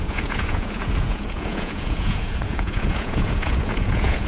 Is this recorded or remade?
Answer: remade